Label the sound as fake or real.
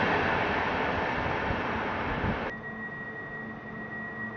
real